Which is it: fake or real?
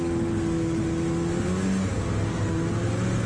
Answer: real